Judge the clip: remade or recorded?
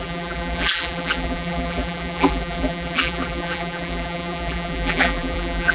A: remade